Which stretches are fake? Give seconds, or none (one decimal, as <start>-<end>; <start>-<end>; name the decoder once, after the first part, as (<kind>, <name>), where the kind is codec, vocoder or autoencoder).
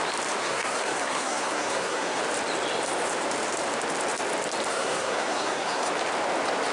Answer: 0.4-2.2 (codec, SNAC); 4.7-5.9